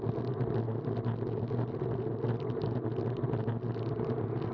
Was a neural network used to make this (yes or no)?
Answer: no